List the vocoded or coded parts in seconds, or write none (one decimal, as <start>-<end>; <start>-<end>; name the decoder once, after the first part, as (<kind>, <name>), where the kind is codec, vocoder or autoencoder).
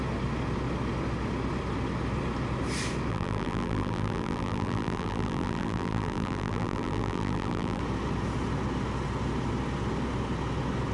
3.1-7.8 (vocoder, BigVGAN v2)